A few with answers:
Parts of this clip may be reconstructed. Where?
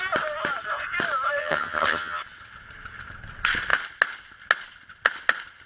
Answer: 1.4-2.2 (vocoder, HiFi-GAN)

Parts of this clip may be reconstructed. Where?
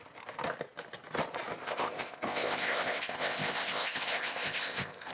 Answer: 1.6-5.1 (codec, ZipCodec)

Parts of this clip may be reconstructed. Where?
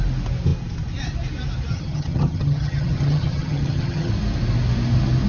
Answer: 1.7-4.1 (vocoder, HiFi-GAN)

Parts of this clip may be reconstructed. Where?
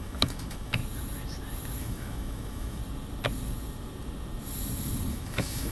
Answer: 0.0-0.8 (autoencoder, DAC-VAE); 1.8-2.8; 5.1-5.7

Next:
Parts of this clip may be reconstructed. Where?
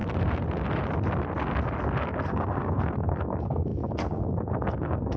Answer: 2.0-5.2 (codec, SNAC)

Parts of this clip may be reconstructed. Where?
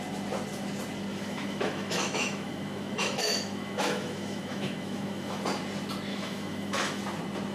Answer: 1.1-5.4 (autoencoder, DAC-VAE); 6.1-7.0